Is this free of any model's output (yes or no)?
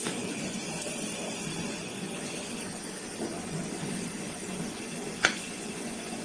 no